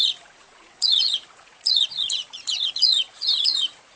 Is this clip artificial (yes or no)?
yes